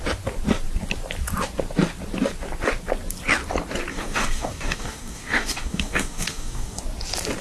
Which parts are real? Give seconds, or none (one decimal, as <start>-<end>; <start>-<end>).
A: 0.0-3.9; 6.8-7.4

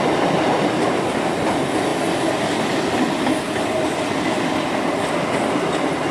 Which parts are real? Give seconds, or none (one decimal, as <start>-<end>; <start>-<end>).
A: 0.0-6.1